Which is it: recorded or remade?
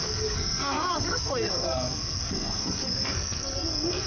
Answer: remade